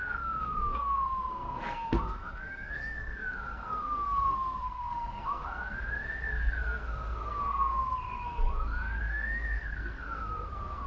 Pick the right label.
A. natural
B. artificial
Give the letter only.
B